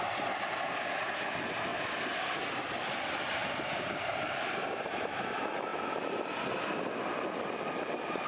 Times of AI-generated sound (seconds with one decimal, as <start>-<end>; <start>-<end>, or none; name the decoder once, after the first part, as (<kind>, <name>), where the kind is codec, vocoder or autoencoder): 1.7-2.4 (vocoder, BigVGAN v2); 3.4-4.4